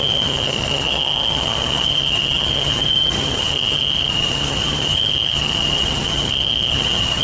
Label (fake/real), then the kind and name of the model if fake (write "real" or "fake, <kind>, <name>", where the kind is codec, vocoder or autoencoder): fake, vocoder, HiFi-GAN